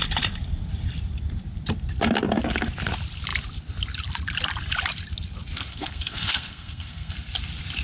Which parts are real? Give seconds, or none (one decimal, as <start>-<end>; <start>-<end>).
0.0-5.7; 7.1-7.8